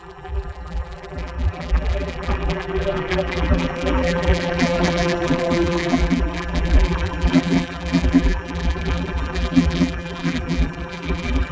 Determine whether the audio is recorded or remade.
remade